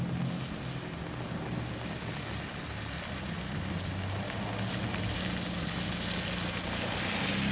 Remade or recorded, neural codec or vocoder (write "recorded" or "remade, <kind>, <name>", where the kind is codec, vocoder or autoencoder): recorded